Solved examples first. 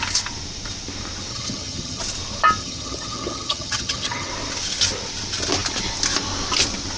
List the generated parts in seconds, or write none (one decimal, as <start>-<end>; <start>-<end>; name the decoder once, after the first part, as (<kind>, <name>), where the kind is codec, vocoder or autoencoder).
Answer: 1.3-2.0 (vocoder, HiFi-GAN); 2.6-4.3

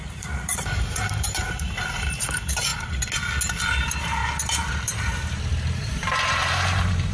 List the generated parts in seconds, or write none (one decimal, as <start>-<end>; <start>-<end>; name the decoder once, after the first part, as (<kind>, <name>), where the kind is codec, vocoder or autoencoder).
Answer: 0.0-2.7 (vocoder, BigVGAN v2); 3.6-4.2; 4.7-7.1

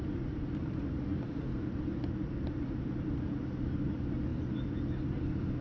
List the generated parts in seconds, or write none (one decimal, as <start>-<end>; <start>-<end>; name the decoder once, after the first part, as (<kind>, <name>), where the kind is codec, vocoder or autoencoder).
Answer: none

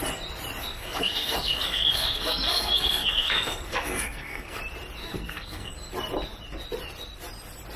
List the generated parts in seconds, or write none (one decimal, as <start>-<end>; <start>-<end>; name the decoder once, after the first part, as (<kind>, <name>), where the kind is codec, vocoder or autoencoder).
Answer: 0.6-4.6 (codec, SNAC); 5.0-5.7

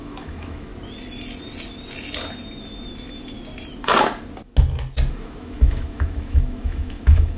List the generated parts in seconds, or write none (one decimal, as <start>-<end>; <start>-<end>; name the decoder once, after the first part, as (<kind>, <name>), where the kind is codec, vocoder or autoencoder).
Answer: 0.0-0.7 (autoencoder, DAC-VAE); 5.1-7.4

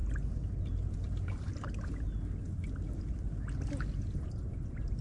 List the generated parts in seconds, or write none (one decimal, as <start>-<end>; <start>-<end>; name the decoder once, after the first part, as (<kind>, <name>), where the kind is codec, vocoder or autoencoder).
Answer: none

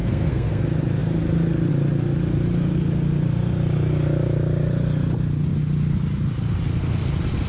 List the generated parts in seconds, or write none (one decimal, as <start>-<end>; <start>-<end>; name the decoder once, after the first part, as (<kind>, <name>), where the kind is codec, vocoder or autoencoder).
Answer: 0.0-0.6 (codec, SNAC)

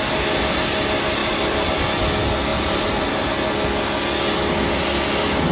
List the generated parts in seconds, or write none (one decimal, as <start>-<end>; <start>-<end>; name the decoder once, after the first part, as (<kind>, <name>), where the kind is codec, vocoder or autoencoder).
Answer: 1.2-1.7 (vocoder, BigVGAN v2); 2.5-3.3